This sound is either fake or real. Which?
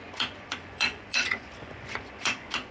fake